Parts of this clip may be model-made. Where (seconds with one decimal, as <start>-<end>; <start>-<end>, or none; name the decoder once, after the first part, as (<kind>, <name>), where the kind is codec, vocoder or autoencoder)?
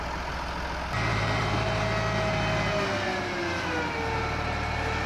1.1-1.8 (vocoder, BigVGAN v2)